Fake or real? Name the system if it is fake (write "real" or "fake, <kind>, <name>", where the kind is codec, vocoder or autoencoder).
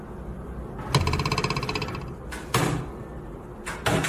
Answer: real